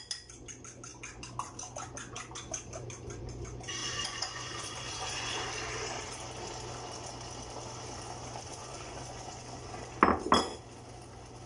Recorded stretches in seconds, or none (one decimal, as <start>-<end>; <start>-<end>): 0.0-3.8; 5.4-8.5; 9.7-11.5